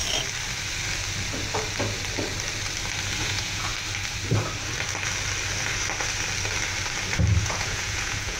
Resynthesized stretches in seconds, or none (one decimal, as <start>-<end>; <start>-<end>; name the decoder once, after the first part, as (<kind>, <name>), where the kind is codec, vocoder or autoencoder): 3.2-3.7 (vocoder, Vocos); 7.4-8.4